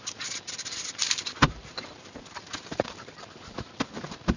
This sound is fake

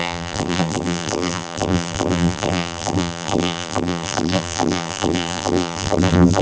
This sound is fake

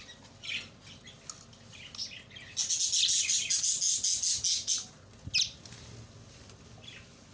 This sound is real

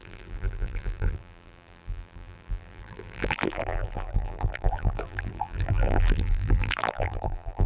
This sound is fake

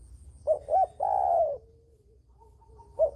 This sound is real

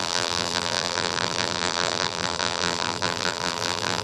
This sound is fake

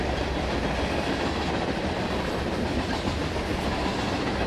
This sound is real